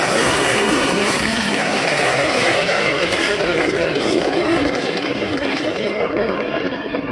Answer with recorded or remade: remade